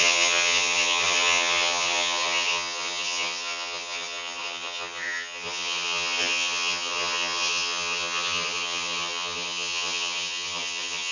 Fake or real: fake